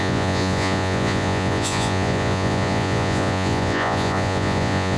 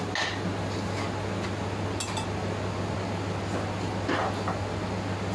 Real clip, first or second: second